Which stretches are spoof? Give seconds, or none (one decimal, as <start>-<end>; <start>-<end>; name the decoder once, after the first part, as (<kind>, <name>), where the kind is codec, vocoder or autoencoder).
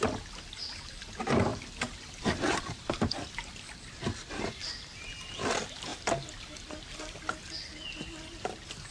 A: 1.5-4.0 (vocoder, BigVGAN v2)